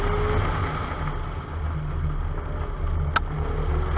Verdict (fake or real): real